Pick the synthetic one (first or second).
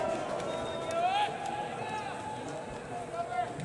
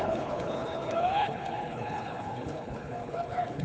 second